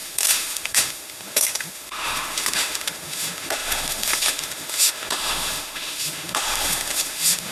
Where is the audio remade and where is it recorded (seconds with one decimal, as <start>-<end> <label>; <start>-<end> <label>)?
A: 0.0-7.5 remade